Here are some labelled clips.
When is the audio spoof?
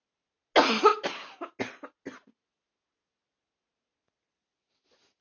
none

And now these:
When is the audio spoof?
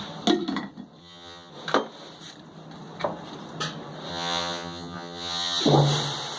1.0-1.5 (vocoder, HiFi-GAN); 4.1-5.6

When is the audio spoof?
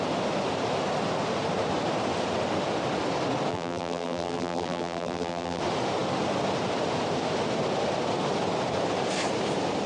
3.5-5.6 (vocoder, BigVGAN v2)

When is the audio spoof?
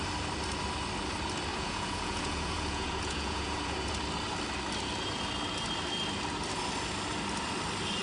1.5-3.9 (vocoder, Vocos)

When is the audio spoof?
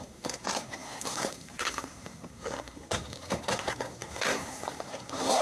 0.0-5.4 (codec, SNAC)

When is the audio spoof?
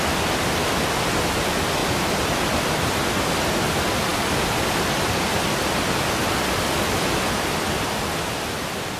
4.1-7.2 (vocoder, BigVGAN v2)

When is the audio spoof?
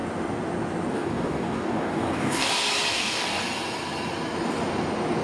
0.9-2.5 (codec, DAC); 2.9-3.4